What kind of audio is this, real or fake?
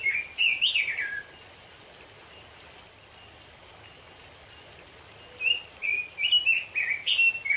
real